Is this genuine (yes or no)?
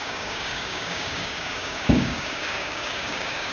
no